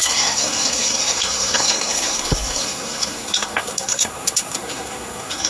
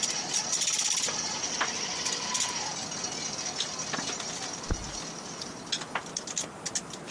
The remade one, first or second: first